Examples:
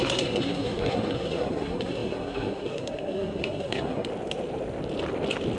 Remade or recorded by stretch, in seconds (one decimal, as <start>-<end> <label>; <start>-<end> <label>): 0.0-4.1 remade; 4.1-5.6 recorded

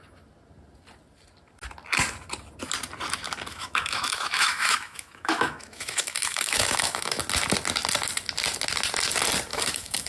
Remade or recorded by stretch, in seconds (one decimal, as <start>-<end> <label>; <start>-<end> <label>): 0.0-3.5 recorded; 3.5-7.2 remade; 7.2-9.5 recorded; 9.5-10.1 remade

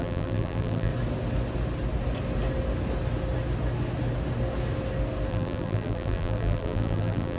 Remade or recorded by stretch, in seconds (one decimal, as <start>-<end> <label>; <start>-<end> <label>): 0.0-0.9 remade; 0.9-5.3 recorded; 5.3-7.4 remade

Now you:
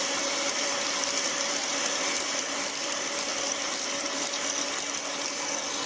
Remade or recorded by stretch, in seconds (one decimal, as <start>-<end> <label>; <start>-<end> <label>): 0.0-5.9 recorded

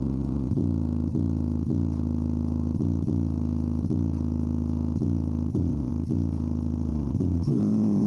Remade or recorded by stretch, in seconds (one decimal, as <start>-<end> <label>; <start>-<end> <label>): 0.0-0.6 remade; 0.6-5.5 recorded; 5.5-5.9 remade; 5.9-6.9 recorded; 6.9-8.1 remade